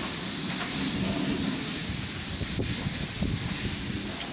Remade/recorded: recorded